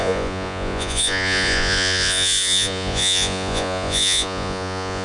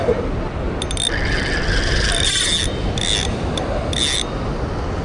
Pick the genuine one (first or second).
second